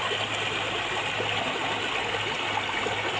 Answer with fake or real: real